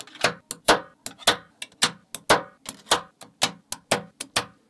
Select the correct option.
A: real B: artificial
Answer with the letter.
A